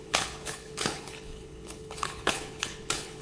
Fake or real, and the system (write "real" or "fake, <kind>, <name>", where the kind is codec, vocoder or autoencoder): fake, codec, HILCodec